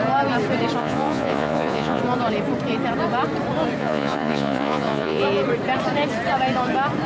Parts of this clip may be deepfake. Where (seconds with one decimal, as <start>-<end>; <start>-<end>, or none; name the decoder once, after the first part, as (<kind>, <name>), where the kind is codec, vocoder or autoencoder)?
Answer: 0.8-2.0 (vocoder, Vocos); 3.8-5.2